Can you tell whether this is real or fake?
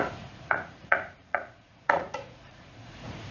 fake